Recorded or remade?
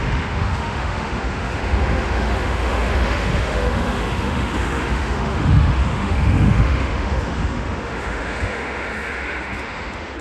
remade